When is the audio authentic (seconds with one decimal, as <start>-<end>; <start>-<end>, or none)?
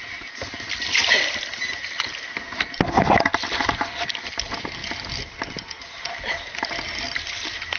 0.0-7.8